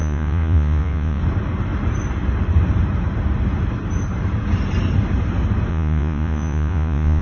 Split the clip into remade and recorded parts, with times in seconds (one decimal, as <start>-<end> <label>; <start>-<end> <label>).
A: 0.0-1.2 remade; 1.2-5.7 recorded; 5.7-7.2 remade